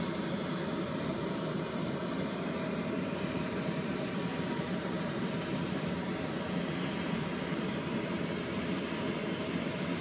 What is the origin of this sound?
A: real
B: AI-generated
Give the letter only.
B